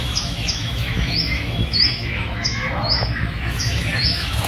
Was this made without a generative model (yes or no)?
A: no